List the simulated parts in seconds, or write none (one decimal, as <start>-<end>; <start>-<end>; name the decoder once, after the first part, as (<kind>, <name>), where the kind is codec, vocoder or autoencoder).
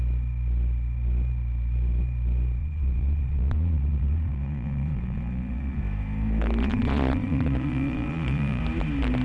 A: 2.6-5.8 (vocoder, Vocos); 6.6-8.6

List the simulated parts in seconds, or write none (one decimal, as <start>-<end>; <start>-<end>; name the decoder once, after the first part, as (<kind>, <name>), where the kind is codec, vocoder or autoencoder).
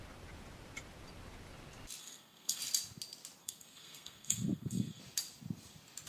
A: 2.0-2.6 (codec, SNAC); 3.4-5.0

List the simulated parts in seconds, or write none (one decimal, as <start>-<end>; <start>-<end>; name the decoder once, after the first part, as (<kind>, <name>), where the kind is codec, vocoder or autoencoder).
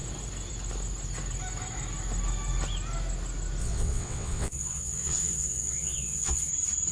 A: 3.6-6.5 (vocoder, WaveNeXt)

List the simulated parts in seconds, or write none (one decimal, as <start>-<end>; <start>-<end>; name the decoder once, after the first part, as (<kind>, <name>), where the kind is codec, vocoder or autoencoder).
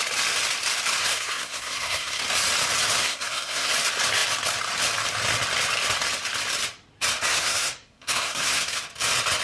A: 1.0-2.2 (codec, SNAC); 3.0-3.7; 7.3-8.8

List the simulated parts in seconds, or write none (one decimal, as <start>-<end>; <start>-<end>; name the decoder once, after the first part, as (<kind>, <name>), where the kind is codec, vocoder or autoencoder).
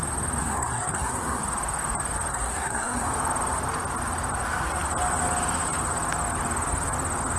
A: 0.4-1.4 (codec, SNAC); 2.3-3.1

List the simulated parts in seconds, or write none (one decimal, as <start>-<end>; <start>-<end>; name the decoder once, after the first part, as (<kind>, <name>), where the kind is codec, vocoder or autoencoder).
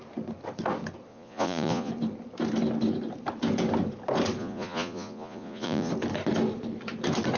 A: 1.1-1.9 (vocoder, Vocos); 4.4-5.9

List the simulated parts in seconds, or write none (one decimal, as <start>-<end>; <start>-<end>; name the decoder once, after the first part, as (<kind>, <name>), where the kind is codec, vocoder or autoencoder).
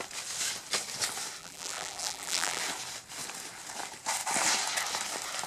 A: 1.4-2.6 (vocoder, BigVGAN v2)